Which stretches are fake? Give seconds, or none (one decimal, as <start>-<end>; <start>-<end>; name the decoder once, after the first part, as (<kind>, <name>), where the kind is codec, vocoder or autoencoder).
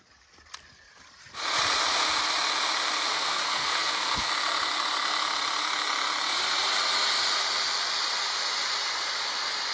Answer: 3.1-4.3 (codec, SNAC)